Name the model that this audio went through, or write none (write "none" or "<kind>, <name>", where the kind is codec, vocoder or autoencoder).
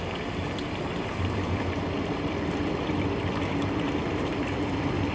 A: vocoder, BigVGAN v2